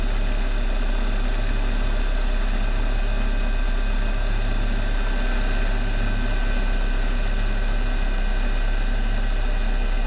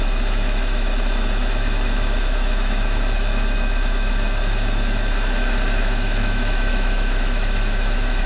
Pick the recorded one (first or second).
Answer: first